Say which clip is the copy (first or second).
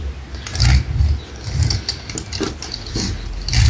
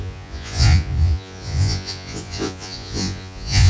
second